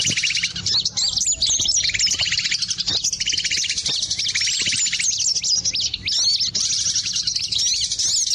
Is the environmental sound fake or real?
real